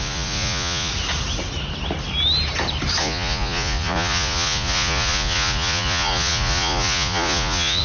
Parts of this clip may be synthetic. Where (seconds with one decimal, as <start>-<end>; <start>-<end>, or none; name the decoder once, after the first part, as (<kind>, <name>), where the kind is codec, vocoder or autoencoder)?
0.0-0.9 (vocoder, Vocos); 3.0-7.8